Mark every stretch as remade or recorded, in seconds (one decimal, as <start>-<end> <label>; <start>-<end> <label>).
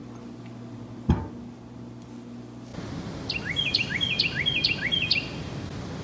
0.0-6.0 recorded